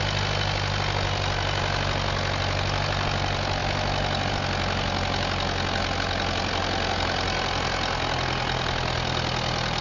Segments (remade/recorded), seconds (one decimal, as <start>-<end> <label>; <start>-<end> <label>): 0.0-9.8 recorded